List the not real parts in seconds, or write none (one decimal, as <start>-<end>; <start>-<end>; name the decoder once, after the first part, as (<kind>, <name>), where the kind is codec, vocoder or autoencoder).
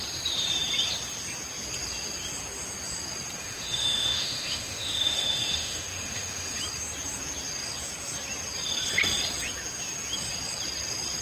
3.4-6.6 (autoencoder, DAC-VAE)